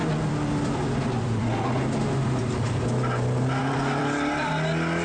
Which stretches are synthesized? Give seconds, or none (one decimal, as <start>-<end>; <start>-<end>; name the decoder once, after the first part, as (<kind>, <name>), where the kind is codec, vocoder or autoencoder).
0.0-2.8 (vocoder, BigVGAN v2); 3.6-4.5